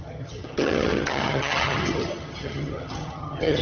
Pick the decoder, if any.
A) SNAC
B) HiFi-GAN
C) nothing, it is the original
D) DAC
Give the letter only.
B